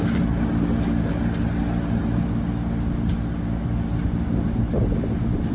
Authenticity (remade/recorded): recorded